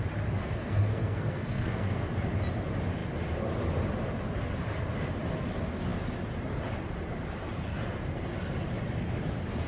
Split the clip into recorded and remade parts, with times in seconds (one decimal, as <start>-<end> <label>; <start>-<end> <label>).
0.0-0.4 recorded; 0.4-2.1 remade; 2.1-9.7 recorded